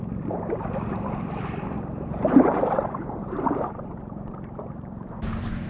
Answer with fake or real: fake